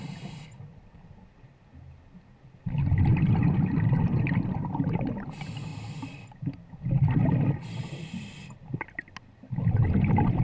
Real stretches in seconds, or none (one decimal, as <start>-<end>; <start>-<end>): 0.0-3.1; 4.2-10.4